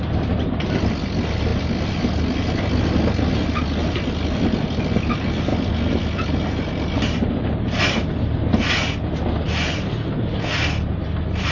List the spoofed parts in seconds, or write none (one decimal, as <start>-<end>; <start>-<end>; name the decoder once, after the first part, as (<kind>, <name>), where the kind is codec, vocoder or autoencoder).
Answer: none